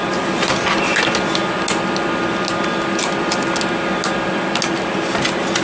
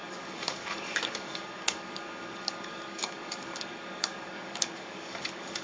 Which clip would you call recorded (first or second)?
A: first